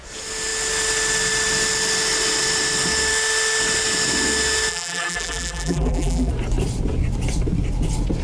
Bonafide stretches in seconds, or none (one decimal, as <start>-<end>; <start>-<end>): 0.0-4.7; 6.3-8.2